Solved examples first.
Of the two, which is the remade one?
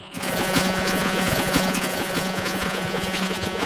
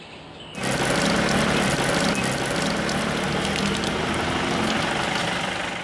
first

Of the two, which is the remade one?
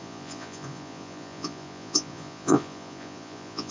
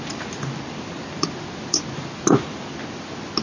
first